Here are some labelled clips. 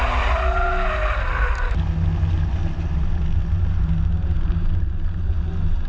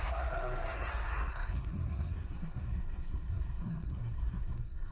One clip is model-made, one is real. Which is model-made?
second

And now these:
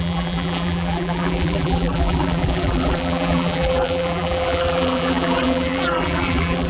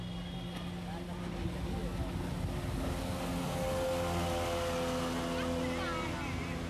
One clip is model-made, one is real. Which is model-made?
first